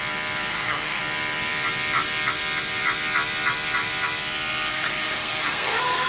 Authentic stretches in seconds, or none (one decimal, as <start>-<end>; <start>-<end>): 0.0-0.5; 1.0-4.7

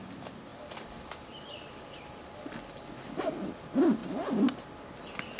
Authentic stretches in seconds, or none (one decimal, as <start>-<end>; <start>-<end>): 0.0-0.5; 3.3-4.0; 4.6-5.4